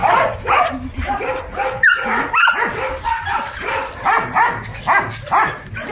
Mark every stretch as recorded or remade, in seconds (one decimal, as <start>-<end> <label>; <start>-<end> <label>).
0.0-5.9 recorded